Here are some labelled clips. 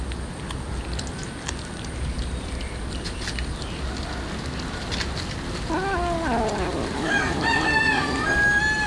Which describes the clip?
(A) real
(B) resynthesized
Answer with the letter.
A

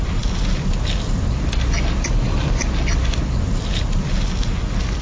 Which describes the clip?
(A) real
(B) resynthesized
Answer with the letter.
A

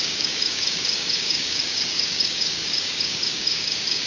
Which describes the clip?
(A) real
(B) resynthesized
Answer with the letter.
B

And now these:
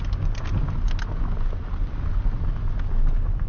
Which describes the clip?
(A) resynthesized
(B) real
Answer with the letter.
B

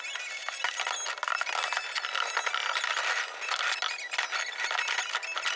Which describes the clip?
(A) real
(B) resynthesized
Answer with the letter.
A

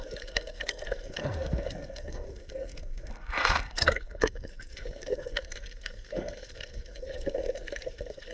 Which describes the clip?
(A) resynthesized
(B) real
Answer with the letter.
A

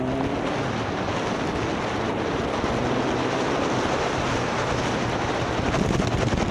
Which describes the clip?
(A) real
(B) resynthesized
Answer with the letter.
A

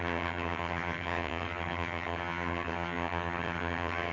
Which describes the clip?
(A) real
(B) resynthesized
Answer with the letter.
B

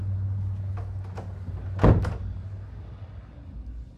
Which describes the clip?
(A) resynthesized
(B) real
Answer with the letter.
B